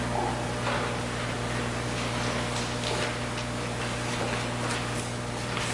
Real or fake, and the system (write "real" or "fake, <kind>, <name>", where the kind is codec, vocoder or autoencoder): real